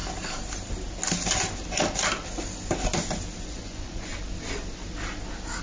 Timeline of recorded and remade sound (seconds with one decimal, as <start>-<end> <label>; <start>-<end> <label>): 0.0-3.4 recorded; 3.4-4.1 remade; 4.1-5.6 recorded